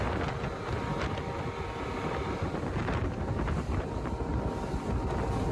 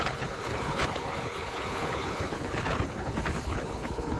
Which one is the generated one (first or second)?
second